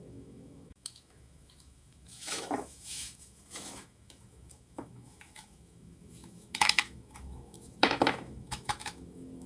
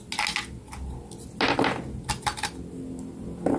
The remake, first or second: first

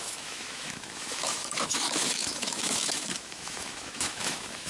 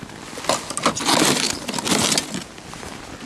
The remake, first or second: first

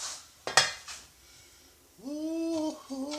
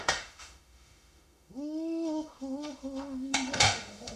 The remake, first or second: second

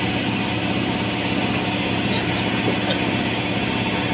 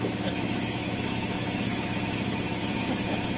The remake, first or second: second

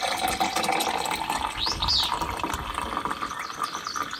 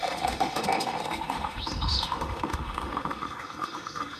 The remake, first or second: second